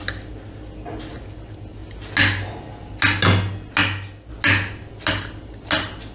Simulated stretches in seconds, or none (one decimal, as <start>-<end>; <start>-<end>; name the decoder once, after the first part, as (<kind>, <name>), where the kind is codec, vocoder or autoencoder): none